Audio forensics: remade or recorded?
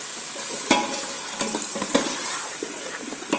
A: recorded